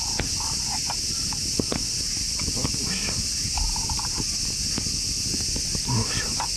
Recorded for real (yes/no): yes